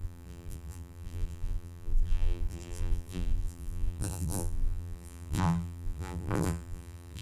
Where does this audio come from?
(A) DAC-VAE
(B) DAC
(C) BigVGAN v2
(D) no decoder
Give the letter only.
C